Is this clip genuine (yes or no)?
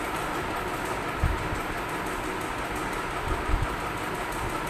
yes